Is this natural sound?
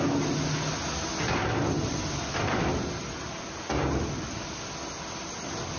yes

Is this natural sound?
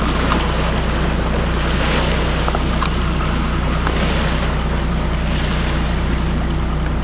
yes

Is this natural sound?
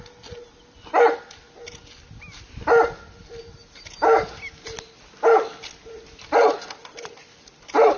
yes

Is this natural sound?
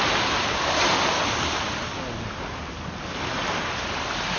yes